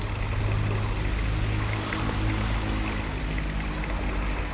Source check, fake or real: real